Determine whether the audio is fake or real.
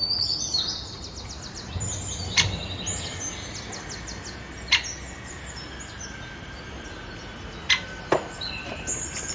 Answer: real